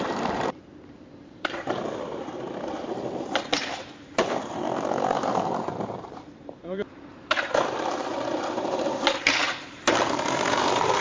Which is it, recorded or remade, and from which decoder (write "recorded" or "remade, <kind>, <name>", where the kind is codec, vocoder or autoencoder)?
remade, vocoder, BigVGAN v2